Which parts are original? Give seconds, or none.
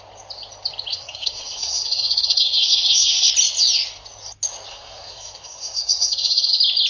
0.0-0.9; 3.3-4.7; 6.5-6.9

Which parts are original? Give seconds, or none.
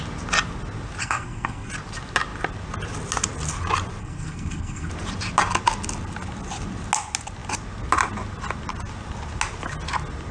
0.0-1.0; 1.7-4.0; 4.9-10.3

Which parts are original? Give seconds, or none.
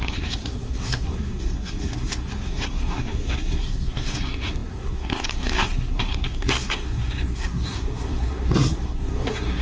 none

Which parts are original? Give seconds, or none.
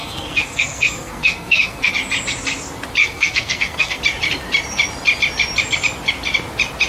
1.9-3.0; 4.0-6.9